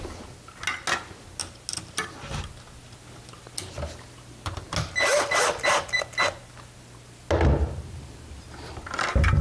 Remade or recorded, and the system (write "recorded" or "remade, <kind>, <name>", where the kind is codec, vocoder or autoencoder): recorded